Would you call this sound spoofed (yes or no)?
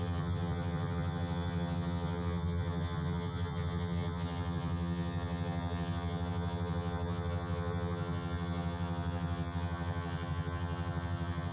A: yes